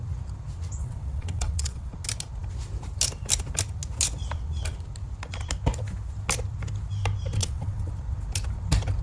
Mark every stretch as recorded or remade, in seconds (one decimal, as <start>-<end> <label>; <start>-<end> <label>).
0.0-0.8 recorded; 0.8-1.9 remade; 1.9-7.4 recorded; 7.4-7.9 remade; 7.9-9.0 recorded